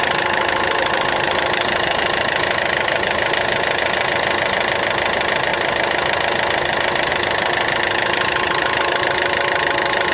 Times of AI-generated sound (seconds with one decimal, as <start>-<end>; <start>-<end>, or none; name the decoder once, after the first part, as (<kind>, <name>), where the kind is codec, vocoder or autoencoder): none